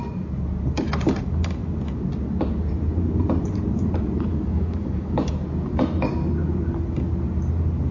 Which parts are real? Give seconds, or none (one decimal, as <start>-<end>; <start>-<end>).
0.0-4.3; 5.2-7.9